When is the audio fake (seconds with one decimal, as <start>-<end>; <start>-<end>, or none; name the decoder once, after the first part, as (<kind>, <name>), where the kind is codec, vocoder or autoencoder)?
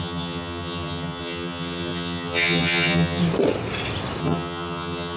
0.0-3.2 (vocoder, HiFi-GAN); 4.2-5.2